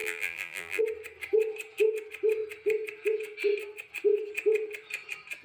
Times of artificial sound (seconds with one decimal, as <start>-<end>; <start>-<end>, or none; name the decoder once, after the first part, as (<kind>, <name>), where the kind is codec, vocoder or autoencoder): 0.0-0.8 (vocoder, BigVGAN v2)